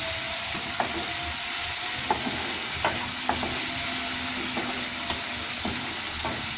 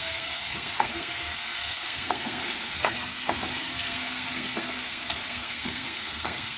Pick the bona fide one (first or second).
first